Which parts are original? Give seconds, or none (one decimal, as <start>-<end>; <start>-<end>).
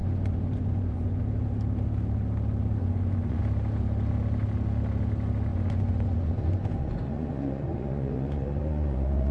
1.2-2.8; 3.4-5.5